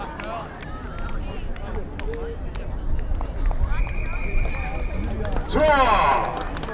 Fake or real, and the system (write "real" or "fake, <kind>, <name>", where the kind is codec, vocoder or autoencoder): real